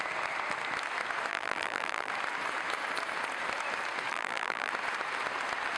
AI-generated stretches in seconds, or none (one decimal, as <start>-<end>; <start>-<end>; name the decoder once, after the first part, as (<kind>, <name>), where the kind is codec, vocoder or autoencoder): 1.3-2.1 (vocoder, BigVGAN v2); 4.1-4.7